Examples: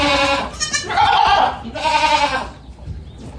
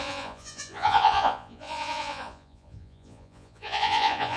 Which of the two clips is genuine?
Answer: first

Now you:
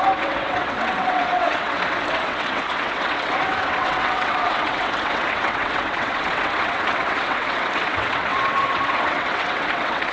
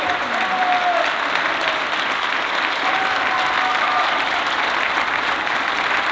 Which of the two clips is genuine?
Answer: second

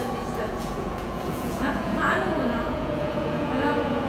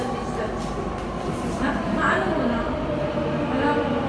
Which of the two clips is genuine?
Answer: second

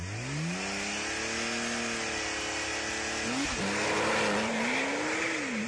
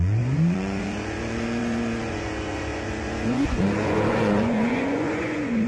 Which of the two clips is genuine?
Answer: first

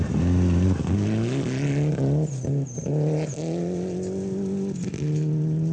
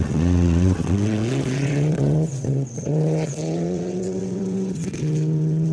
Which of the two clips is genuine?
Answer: first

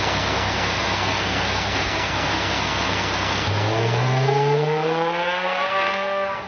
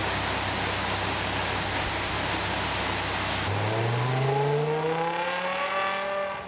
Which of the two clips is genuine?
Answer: second